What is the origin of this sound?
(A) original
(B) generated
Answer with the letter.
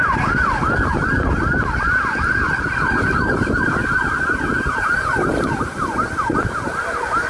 A